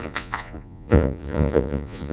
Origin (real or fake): fake